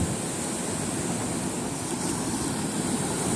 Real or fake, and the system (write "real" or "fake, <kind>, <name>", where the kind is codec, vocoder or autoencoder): real